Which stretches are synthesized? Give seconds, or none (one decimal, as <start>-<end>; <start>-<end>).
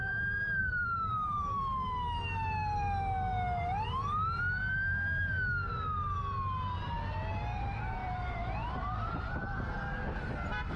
0.6-1.6; 8.0-9.3